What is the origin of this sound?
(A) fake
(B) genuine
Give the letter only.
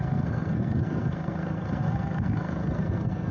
A